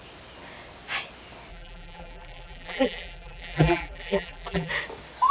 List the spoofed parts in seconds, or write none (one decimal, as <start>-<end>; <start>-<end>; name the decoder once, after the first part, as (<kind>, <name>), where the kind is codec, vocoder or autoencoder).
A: 1.5-4.7 (vocoder, BigVGAN v2)